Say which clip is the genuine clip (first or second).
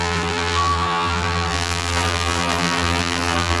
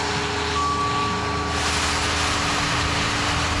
second